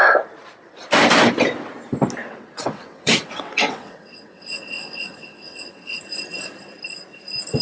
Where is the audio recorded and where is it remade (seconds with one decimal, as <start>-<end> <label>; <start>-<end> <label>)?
0.0-2.2 recorded; 2.2-6.0 remade; 6.0-7.6 recorded